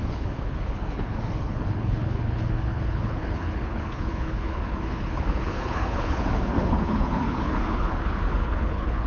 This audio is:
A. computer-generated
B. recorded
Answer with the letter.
A